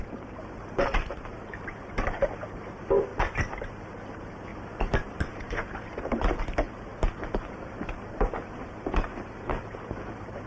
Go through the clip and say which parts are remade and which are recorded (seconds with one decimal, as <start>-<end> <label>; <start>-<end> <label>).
0.0-3.1 remade; 3.1-3.6 recorded; 3.6-10.5 remade